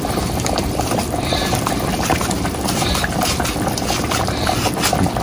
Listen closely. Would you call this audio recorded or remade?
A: remade